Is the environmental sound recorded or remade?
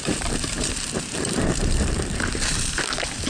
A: remade